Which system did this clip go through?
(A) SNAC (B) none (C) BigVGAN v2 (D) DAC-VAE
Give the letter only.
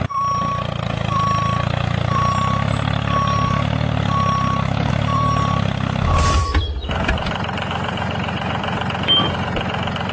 B